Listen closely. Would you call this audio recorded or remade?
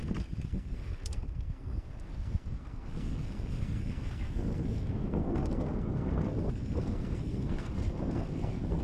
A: remade